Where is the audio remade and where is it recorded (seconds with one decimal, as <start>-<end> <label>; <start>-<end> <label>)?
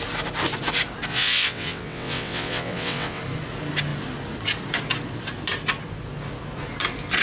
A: 0.0-1.1 recorded; 1.1-3.2 remade; 3.2-7.2 recorded